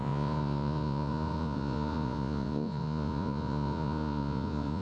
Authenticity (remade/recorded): remade